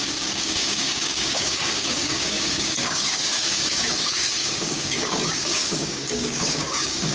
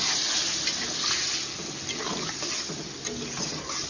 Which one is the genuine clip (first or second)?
second